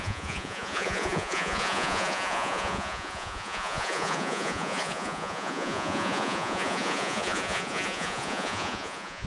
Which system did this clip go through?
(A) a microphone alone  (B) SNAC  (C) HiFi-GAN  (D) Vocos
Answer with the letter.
D